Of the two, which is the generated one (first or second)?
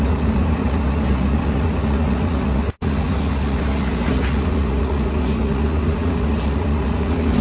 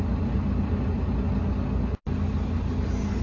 first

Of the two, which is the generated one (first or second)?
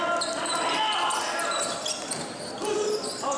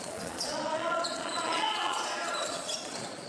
second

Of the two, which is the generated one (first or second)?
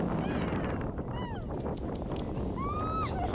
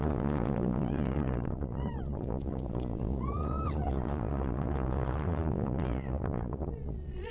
second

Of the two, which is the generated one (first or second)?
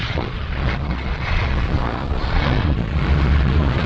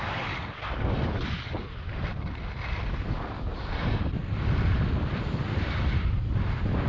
first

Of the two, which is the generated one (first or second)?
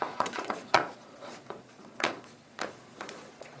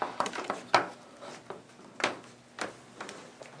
first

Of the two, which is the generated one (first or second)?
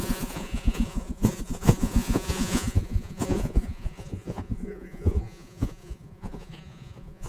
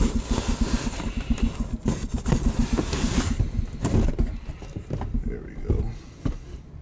first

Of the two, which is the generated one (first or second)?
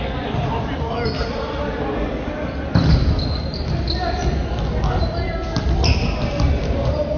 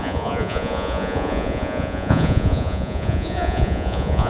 second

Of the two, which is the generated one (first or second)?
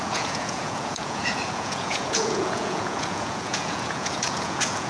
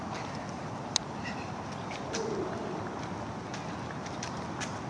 first